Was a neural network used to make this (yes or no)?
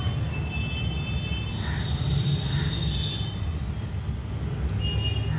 no